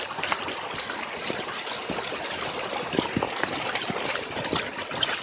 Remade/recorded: recorded